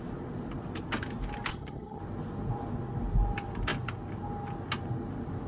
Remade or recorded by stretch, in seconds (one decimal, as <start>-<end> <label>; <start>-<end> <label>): 0.0-1.5 recorded; 1.5-2.0 remade; 2.0-5.5 recorded